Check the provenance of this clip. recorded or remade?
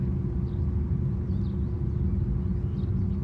recorded